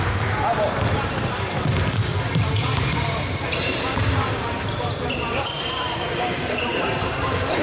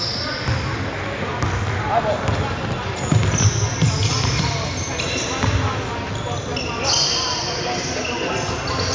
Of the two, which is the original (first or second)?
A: second